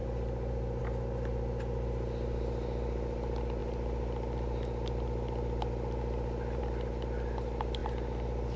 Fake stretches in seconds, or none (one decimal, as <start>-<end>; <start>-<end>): none